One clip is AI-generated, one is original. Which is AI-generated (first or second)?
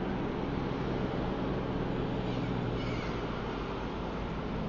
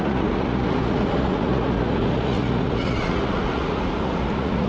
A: second